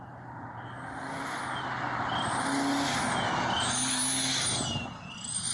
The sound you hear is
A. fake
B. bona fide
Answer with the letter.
B